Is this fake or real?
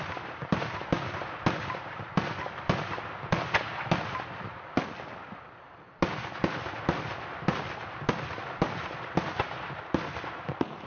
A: real